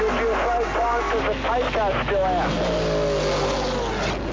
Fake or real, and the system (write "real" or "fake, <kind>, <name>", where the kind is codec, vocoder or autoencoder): real